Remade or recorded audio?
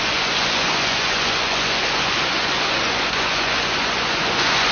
remade